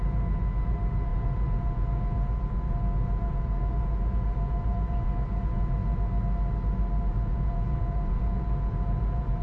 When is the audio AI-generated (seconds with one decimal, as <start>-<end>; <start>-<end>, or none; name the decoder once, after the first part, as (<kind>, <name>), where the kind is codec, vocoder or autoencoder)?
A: 0.0-5.8 (vocoder, Vocos); 7.1-9.4